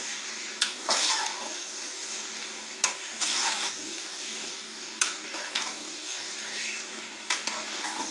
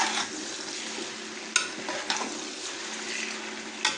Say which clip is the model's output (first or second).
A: first